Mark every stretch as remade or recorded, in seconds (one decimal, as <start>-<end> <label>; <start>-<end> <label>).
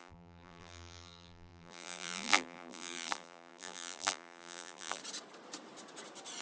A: 0.0-5.0 remade; 5.0-6.4 recorded